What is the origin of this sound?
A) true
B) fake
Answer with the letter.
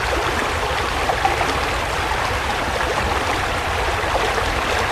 A